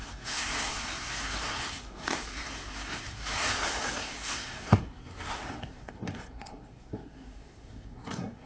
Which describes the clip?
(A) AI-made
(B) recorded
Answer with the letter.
A